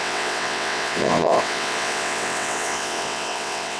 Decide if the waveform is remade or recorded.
remade